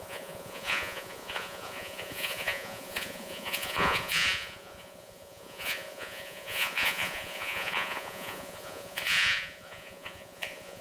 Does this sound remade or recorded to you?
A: remade